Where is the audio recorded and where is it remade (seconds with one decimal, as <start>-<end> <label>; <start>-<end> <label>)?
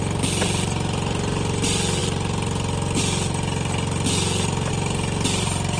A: 0.0-5.8 recorded